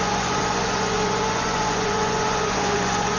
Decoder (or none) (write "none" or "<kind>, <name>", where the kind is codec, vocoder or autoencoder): vocoder, Vocos